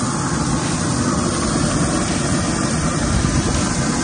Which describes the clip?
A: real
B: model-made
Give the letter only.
B